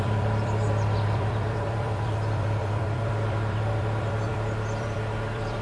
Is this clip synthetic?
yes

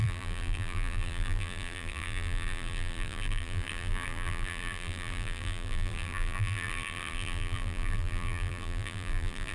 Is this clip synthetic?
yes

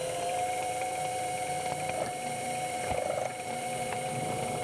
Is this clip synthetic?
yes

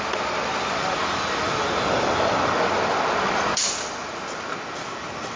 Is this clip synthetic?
yes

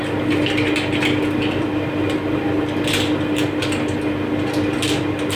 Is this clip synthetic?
no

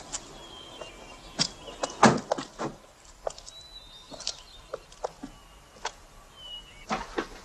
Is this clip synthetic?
no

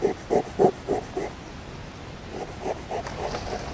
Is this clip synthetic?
no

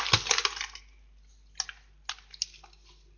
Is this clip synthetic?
no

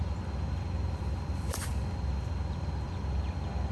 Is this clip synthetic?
no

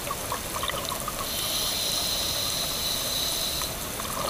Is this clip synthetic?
no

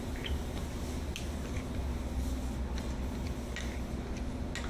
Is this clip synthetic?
no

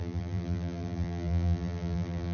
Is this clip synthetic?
yes